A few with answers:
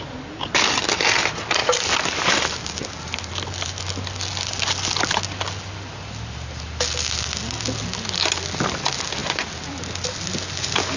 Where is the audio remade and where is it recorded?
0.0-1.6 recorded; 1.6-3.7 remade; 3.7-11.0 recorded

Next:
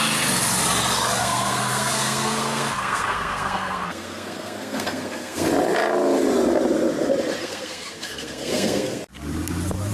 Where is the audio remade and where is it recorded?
0.0-1.2 recorded; 1.2-5.5 remade; 5.5-7.4 recorded; 7.4-9.0 remade; 9.0-9.9 recorded

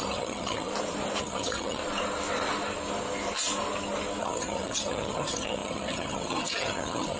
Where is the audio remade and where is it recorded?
0.0-0.7 remade; 0.7-1.2 recorded; 1.2-1.8 remade; 1.8-4.2 recorded; 4.2-7.2 remade

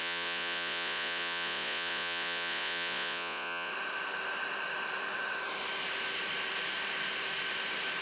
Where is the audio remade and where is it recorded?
0.0-3.7 remade; 3.7-8.0 recorded

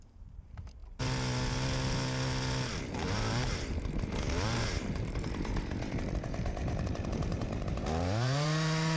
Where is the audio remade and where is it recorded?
0.0-0.8 remade; 0.8-2.8 recorded; 2.8-9.0 remade